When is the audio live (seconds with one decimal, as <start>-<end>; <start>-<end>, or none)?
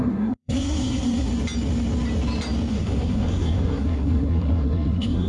1.3-2.7